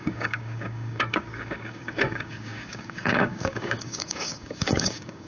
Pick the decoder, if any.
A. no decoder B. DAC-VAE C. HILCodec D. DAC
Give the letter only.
D